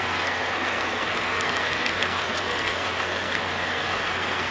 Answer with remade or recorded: remade